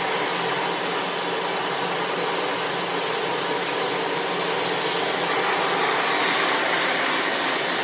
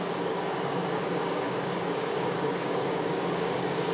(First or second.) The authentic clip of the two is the first